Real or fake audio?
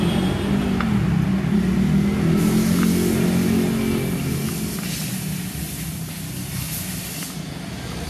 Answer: real